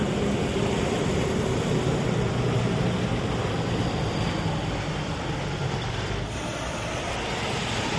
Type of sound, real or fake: fake